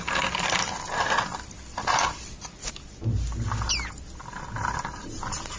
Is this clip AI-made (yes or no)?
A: no